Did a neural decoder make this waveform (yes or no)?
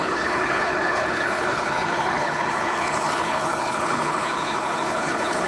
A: yes